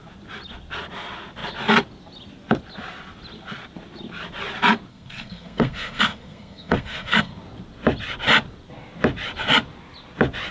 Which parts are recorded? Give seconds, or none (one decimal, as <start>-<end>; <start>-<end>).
0.0-4.9; 7.3-10.5

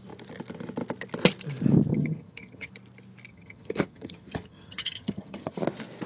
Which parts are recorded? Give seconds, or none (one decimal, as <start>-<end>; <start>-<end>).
0.0-1.9; 2.7-3.3; 5.6-6.1